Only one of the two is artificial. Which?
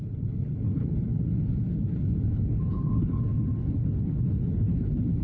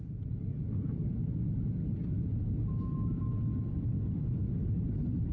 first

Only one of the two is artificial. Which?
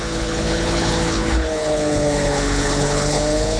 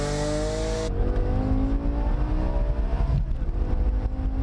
first